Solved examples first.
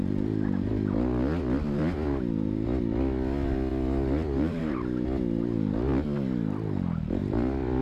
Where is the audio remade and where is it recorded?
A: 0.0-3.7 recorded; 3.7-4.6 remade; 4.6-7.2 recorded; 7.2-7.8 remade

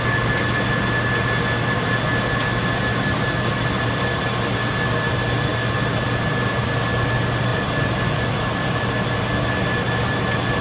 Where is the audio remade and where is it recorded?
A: 0.0-7.5 recorded; 7.5-8.8 remade; 8.8-10.6 recorded